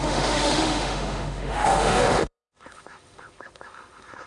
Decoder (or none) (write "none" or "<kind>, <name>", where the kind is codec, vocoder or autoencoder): autoencoder, DAC-VAE